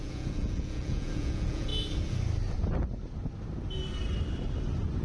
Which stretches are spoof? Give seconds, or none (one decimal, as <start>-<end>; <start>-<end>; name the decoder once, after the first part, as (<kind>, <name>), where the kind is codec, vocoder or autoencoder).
0.0-1.7 (vocoder, Vocos)